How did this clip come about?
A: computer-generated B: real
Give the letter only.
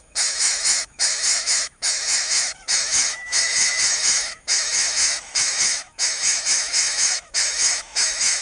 A